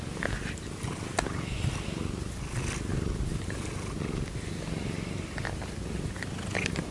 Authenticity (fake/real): real